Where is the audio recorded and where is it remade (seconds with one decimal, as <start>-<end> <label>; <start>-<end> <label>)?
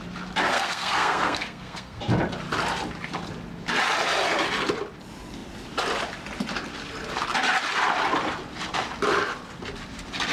0.0-0.5 recorded; 0.5-2.0 remade; 2.0-10.3 recorded